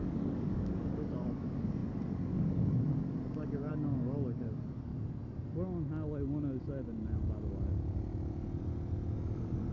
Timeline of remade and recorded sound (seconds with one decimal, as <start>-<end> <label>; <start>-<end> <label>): 0.0-4.9 remade; 4.9-9.7 recorded